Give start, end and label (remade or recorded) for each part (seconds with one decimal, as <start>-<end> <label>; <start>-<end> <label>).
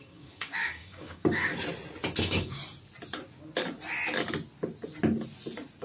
0.0-1.5 remade; 1.5-2.2 recorded; 2.2-2.6 remade; 2.6-5.8 recorded